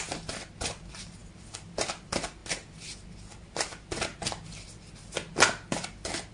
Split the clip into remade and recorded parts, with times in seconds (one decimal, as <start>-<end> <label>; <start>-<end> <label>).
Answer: 0.0-1.2 recorded; 1.2-1.7 remade; 1.7-6.3 recorded